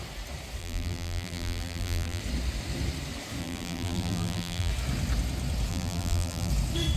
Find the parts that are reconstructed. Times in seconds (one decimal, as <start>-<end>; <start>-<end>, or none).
0.6-2.2; 3.4-4.7; 5.7-6.5